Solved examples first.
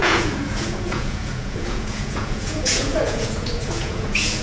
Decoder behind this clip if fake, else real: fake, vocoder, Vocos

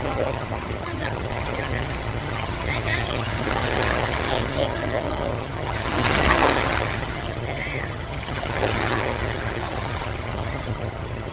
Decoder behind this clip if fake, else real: fake, vocoder, HiFi-GAN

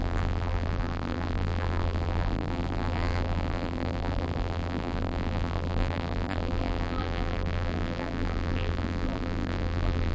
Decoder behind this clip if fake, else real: fake, vocoder, BigVGAN v2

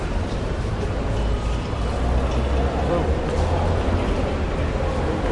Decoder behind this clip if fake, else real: real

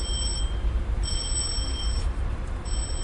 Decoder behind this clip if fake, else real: fake, vocoder, BigVGAN v2